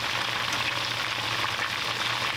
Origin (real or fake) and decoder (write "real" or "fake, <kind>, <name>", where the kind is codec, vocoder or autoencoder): real